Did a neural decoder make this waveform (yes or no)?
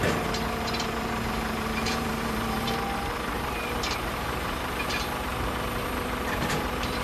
yes